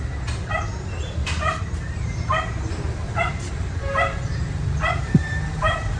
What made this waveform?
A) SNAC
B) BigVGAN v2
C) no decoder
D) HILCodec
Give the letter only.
B